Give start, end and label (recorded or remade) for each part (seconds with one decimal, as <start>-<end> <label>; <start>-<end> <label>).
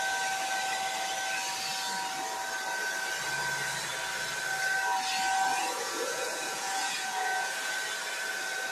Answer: 0.0-5.5 recorded; 5.5-7.7 remade; 7.7-8.7 recorded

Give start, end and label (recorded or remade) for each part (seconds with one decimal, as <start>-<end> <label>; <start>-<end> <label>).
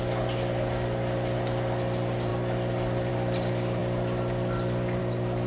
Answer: 0.0-5.5 recorded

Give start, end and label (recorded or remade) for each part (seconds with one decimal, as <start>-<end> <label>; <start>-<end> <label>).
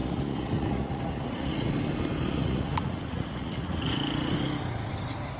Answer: 0.0-1.7 remade; 1.7-2.3 recorded; 2.3-3.9 remade; 3.9-5.4 recorded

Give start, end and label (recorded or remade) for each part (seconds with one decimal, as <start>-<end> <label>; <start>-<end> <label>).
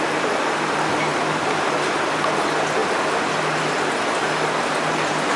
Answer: 0.0-1.1 recorded; 1.1-1.9 remade; 1.9-5.4 recorded